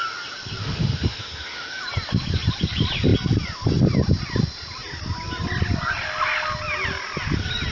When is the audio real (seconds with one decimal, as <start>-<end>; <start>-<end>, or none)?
0.0-0.6; 1.8-7.7